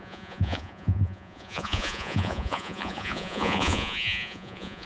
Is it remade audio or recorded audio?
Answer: remade